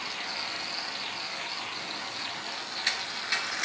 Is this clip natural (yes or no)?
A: yes